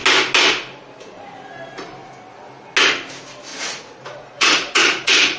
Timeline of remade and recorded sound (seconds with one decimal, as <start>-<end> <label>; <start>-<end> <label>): 0.0-3.5 recorded; 3.5-5.4 remade

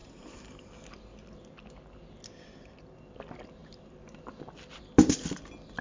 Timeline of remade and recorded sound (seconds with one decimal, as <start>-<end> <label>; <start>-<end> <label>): 0.0-5.8 recorded

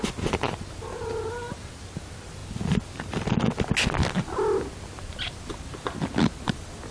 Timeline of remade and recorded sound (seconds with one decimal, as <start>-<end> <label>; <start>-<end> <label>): 0.0-6.9 recorded

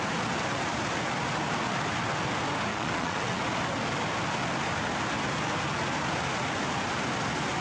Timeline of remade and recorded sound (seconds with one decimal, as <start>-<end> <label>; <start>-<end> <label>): 0.0-2.7 recorded; 2.7-3.4 remade; 3.4-7.6 recorded

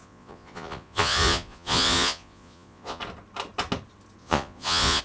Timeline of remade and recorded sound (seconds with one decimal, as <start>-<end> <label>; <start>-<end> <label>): 0.0-3.0 remade; 3.0-4.2 recorded; 4.2-5.0 remade

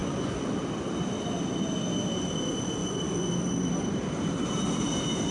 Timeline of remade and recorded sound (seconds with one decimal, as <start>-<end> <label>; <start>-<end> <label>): 0.0-0.5 remade; 0.5-2.8 recorded; 2.8-3.3 remade; 3.3-5.3 recorded